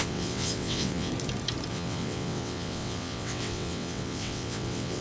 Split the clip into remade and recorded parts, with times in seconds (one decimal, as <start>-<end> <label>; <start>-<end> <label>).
0.0-1.1 remade; 1.1-1.7 recorded; 1.7-5.0 remade